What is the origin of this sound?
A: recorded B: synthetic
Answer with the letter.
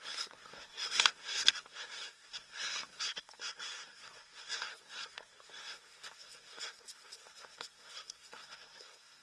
B